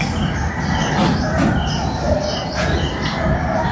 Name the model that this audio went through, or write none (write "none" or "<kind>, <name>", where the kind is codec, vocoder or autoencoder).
none